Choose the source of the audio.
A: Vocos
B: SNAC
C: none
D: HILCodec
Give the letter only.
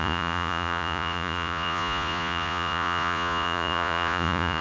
A